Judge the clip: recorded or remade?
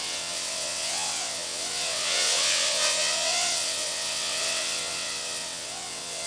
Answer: remade